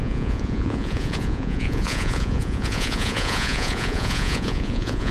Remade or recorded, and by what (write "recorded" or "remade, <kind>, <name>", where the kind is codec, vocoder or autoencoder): remade, vocoder, Vocos